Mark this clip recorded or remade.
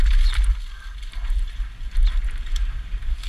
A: remade